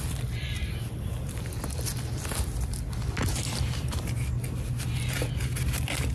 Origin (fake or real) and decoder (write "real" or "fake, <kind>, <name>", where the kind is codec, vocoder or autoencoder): real